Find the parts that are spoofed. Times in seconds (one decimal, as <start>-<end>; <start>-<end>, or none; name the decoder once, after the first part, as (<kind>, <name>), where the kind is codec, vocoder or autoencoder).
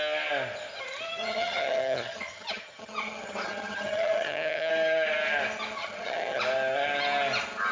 1.2-4.7 (vocoder, HiFi-GAN); 5.8-6.4